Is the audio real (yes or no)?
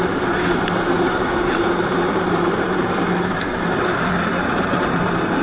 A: no